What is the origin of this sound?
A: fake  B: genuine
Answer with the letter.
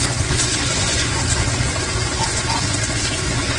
A